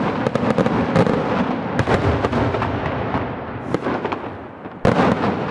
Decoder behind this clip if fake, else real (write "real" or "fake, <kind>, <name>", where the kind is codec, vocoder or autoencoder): real